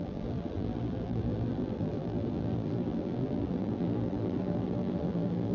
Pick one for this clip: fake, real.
fake